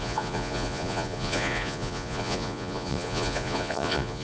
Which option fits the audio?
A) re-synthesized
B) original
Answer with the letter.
A